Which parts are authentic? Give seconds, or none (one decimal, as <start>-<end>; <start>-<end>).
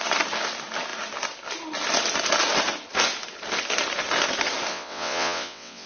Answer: 0.0-4.7